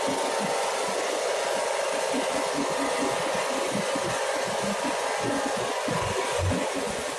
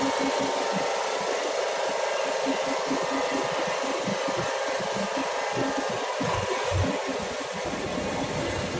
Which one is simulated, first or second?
first